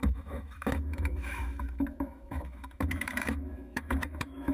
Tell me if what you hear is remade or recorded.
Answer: remade